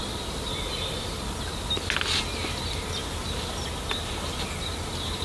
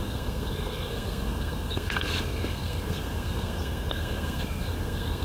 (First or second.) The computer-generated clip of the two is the second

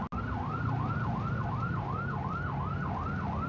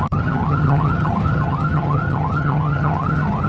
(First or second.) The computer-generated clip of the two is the second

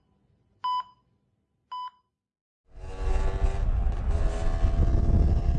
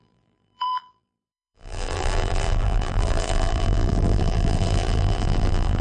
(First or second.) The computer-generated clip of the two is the second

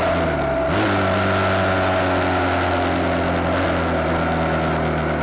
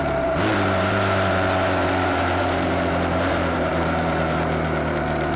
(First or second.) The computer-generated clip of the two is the second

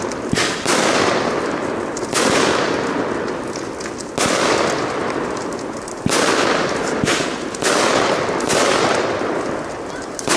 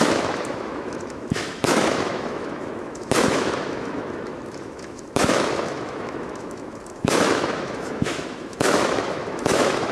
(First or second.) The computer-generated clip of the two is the second